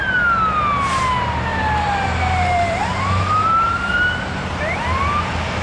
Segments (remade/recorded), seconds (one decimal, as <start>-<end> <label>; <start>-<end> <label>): 0.0-1.5 recorded; 1.5-4.2 remade; 4.2-5.6 recorded